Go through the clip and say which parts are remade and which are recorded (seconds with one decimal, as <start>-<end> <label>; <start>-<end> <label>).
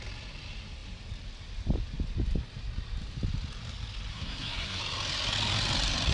0.0-4.1 recorded; 4.1-4.8 remade; 4.8-6.1 recorded